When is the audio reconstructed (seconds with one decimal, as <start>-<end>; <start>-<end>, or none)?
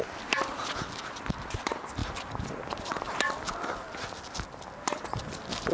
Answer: none